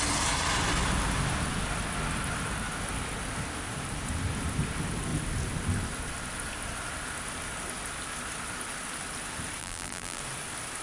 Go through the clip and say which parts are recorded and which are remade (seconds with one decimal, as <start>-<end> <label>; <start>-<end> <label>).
0.0-9.6 recorded; 9.6-10.2 remade; 10.2-10.8 recorded